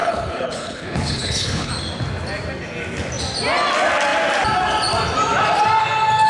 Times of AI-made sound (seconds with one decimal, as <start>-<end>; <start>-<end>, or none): 0.0-1.7